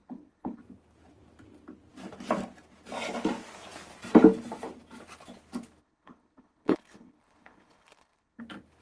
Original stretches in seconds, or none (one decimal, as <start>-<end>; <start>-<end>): 0.6-5.8; 8.4-8.8